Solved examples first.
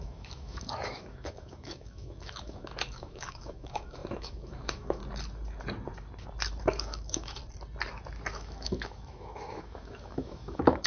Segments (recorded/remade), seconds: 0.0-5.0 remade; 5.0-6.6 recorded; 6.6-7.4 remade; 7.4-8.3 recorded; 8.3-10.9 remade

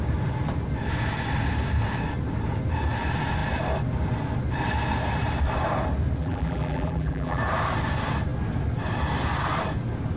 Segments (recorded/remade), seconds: 0.0-6.2 recorded; 6.2-7.4 remade; 7.4-10.2 recorded

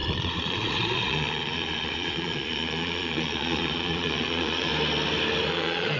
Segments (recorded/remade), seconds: 0.0-4.7 remade; 4.7-5.5 recorded; 5.5-6.0 remade

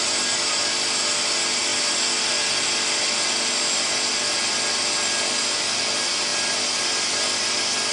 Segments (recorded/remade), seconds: 0.0-7.9 recorded

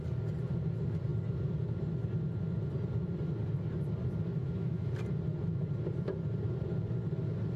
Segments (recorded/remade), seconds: 0.0-4.4 recorded; 4.4-4.9 remade; 4.9-7.6 recorded

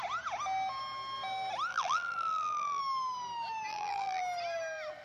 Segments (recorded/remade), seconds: 0.0-1.7 recorded; 1.7-2.8 remade; 2.8-3.7 recorded; 3.7-4.2 remade; 4.2-5.0 recorded

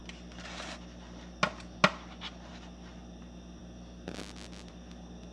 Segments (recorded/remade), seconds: 0.0-5.3 recorded

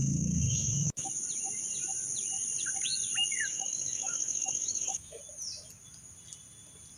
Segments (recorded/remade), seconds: 0.0-1.1 remade; 1.1-3.5 recorded; 3.5-5.2 remade; 5.2-7.0 recorded